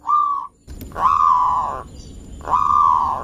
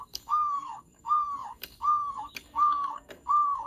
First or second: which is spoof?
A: second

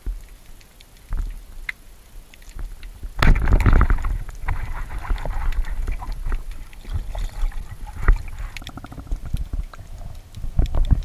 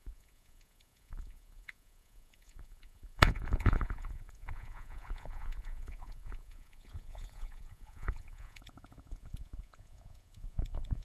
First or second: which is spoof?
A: second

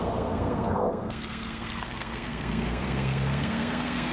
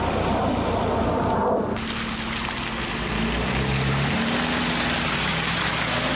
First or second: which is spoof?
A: first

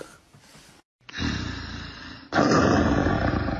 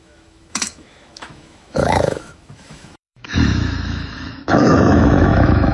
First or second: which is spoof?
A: second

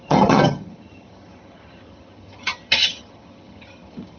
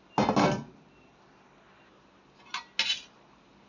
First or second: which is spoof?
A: first